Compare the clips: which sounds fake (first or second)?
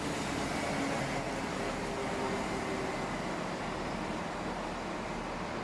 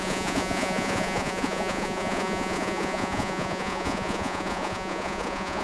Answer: second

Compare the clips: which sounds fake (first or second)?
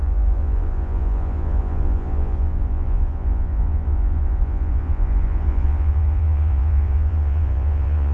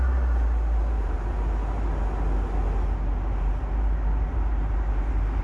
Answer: first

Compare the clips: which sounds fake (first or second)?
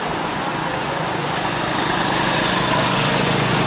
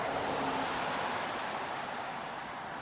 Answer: first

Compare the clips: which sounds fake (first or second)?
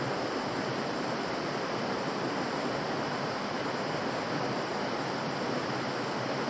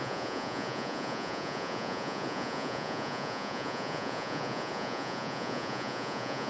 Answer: second